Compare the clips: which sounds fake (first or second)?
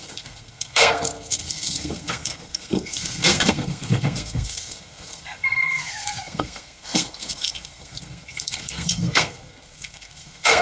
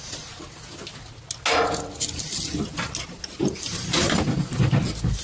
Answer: first